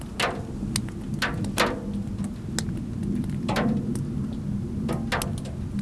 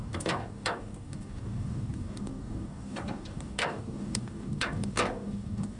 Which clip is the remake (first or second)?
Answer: second